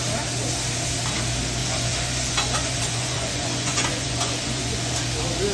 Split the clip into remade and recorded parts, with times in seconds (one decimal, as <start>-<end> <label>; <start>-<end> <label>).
0.0-1.6 recorded; 1.6-4.9 remade; 4.9-5.5 recorded